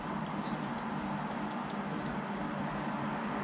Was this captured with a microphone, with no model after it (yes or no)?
yes